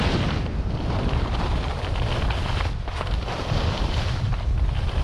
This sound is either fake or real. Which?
fake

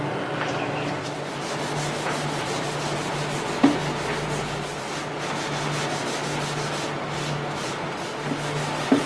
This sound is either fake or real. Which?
real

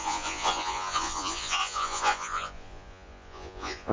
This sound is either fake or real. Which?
fake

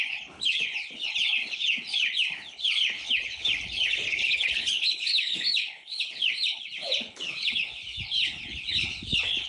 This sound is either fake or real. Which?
fake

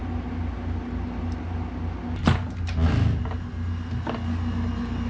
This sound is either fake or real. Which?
real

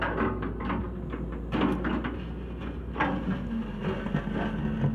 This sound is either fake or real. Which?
real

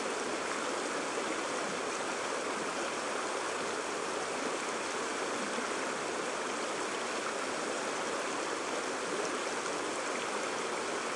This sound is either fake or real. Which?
real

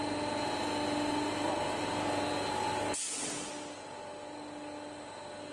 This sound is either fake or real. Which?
real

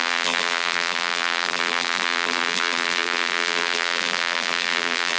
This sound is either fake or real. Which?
fake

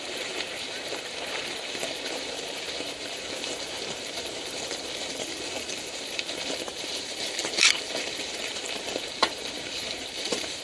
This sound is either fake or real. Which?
fake